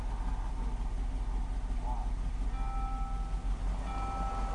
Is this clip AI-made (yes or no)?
no